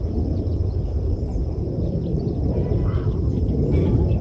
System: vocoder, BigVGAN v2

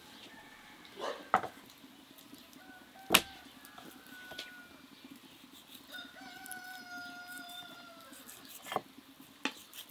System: none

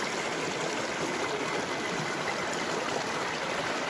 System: none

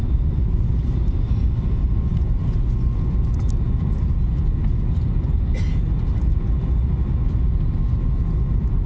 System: none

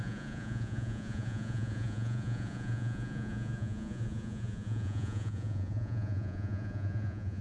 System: vocoder, Vocos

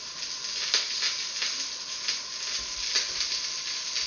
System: none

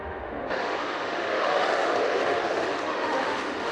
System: autoencoder, DAC-VAE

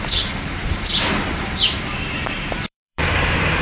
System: vocoder, BigVGAN v2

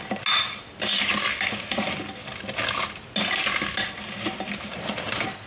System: none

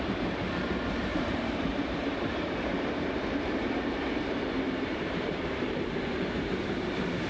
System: vocoder, BigVGAN v2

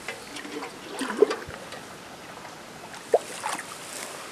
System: none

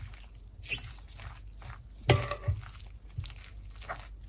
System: none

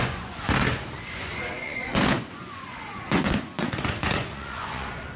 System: vocoder, Vocos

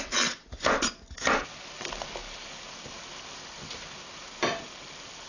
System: none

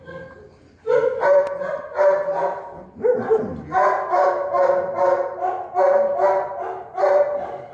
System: none